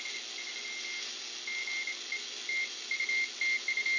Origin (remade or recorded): recorded